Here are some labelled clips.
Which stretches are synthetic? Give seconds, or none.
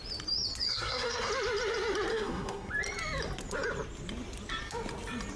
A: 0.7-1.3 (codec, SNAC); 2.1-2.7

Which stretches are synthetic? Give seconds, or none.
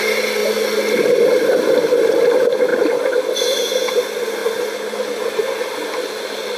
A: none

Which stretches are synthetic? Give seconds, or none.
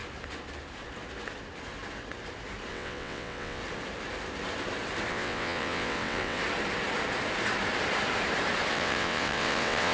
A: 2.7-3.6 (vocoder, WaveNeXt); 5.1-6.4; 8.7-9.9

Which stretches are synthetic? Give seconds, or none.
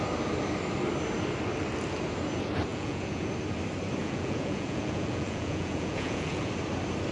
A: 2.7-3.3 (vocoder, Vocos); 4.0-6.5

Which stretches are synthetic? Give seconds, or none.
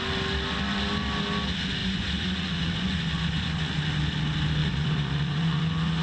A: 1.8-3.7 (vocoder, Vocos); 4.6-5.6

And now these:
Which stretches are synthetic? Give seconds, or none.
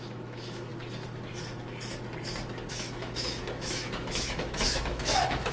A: 0.0-0.7 (autoencoder, DAC-VAE); 2.7-5.5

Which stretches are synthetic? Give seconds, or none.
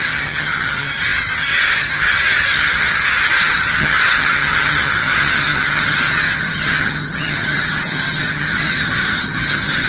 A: 0.0-9.9 (vocoder, HiFi-GAN)